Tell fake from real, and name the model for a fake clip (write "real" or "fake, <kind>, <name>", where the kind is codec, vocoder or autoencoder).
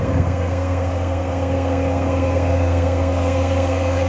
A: fake, codec, SNAC